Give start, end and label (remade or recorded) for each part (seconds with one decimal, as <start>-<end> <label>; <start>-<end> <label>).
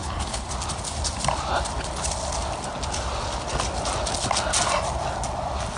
0.0-0.5 remade; 0.5-5.8 recorded